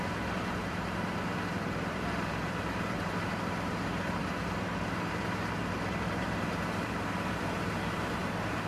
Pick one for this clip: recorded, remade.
remade